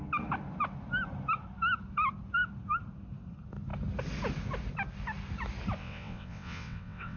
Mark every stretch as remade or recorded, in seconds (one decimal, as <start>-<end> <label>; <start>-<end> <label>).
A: 0.0-5.8 recorded; 5.8-7.2 remade

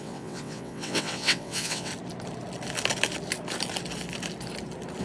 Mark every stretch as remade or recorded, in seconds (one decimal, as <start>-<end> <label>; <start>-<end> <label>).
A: 0.0-1.9 remade; 1.9-5.0 recorded

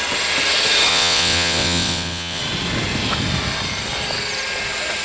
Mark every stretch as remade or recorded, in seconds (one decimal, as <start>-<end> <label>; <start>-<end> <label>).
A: 0.0-0.9 recorded; 0.9-2.4 remade; 2.4-5.0 recorded

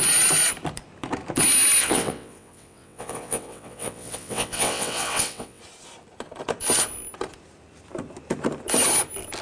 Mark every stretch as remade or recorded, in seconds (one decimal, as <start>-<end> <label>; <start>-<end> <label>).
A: 0.0-1.8 recorded; 1.8-5.6 remade; 5.6-9.4 recorded

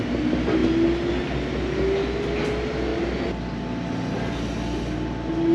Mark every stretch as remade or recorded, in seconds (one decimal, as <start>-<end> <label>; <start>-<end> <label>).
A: 0.0-5.5 recorded

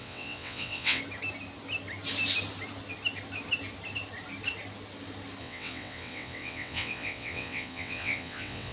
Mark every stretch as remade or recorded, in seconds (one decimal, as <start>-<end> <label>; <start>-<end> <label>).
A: 0.0-1.0 remade; 1.0-5.4 recorded; 5.4-8.7 remade

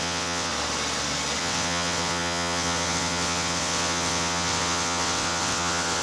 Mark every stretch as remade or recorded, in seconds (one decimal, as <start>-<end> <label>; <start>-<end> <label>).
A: 0.0-0.5 remade; 0.5-1.4 recorded; 1.4-6.0 remade

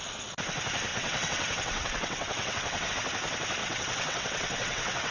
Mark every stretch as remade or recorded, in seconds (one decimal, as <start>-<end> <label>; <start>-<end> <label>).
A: 0.0-0.9 recorded; 0.9-2.9 remade; 2.9-3.6 recorded; 3.6-5.1 remade